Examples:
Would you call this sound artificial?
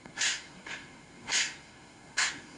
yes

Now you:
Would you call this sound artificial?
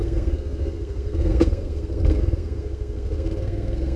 yes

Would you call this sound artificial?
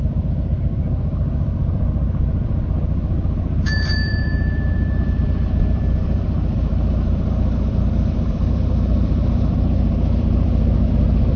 yes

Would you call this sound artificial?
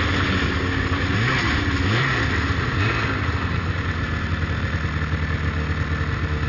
no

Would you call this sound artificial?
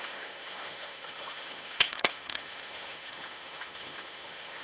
yes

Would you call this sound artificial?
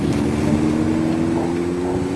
no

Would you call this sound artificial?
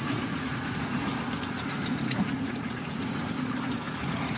yes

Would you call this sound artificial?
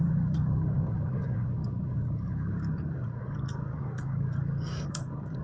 yes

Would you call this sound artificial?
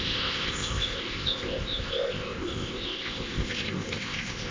yes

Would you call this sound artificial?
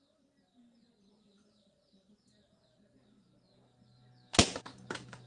no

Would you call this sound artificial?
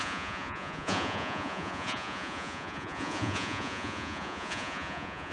yes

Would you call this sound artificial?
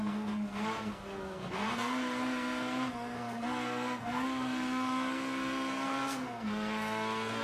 yes